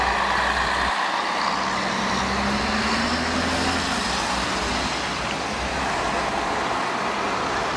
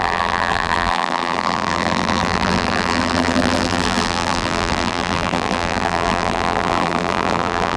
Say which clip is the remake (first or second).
second